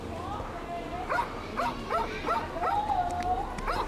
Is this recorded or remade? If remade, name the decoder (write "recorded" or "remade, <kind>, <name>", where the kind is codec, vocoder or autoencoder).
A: recorded